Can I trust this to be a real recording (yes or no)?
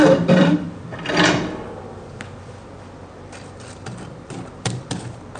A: no